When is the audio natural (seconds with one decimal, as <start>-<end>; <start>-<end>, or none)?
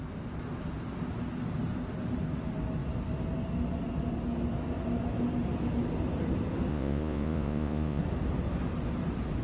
0.0-6.7; 8.0-9.4